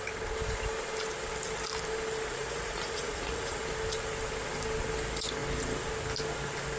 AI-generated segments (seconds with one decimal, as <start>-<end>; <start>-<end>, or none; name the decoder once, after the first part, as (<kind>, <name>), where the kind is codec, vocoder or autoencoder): 2.3-3.6 (vocoder, Vocos)